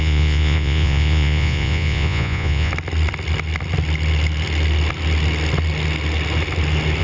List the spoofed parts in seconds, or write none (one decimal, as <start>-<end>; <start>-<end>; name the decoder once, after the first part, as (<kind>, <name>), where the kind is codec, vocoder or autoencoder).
0.0-2.7 (vocoder, Vocos)